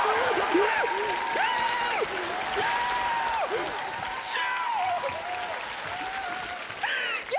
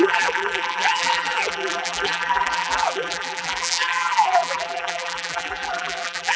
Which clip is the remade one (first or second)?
second